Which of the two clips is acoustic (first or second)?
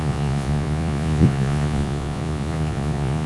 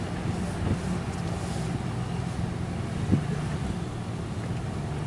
second